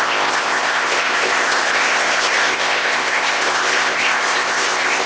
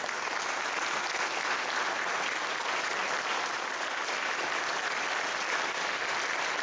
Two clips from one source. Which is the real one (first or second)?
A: second